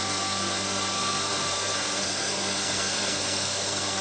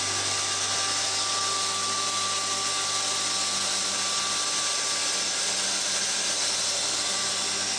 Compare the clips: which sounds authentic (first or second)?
second